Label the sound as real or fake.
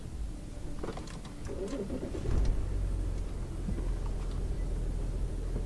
real